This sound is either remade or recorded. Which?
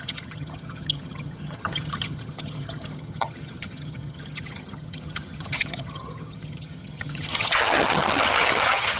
remade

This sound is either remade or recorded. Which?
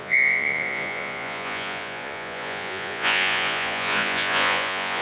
remade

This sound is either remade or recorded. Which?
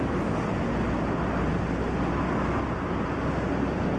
recorded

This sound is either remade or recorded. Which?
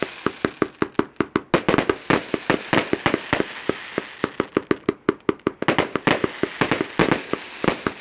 recorded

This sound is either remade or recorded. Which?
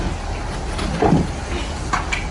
recorded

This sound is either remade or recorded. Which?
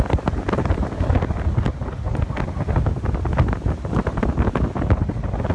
recorded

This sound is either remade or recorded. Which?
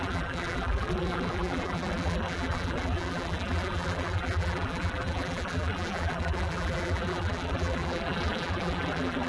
remade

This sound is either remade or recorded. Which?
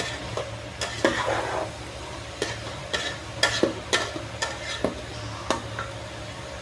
recorded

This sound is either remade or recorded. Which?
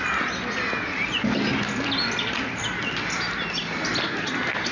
recorded